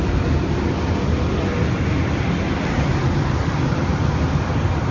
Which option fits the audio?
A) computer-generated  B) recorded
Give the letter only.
B